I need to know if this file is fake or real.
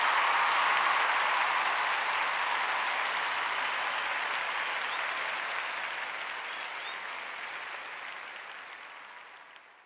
real